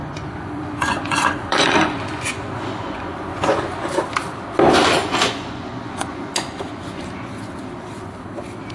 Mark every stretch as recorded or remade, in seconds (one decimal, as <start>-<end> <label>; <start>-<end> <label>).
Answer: 0.0-4.0 remade; 4.0-5.0 recorded; 5.0-8.1 remade; 8.1-8.7 recorded